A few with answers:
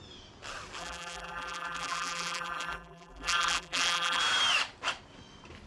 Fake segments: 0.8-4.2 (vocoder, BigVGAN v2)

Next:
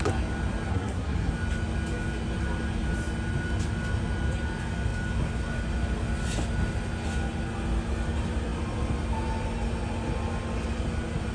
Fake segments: 0.7-1.3 (codec, SNAC)

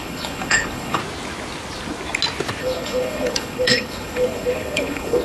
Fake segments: 0.0-1.0 (codec, HILCodec); 2.6-5.2

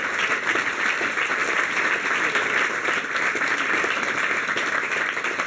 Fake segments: none

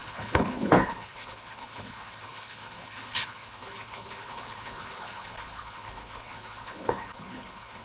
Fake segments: 0.0-7.8 (codec, HILCodec)